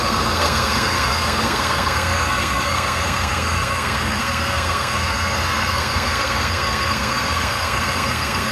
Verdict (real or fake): fake